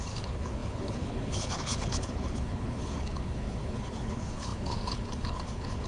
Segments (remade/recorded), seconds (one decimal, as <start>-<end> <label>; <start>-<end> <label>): 0.0-5.9 remade